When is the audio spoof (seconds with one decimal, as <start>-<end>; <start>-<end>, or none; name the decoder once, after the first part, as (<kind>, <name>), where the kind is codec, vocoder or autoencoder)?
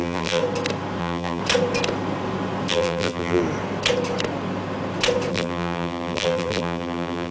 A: 0.0-0.4 (vocoder, BigVGAN v2); 1.0-1.4; 2.7-3.4; 5.3-7.3